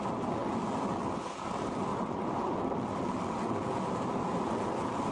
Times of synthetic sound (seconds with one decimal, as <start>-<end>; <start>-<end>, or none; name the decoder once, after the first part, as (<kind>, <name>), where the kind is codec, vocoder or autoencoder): 1.9-2.6 (vocoder, Vocos)